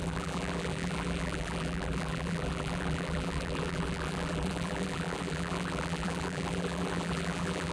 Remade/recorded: remade